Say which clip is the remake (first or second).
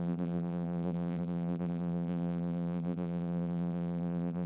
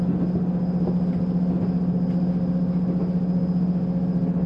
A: first